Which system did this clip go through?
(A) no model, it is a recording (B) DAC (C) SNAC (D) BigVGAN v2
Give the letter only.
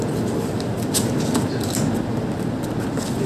A